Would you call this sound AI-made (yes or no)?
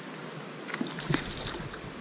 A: no